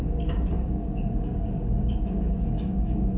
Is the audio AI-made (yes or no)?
yes